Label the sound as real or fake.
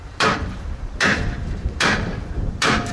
fake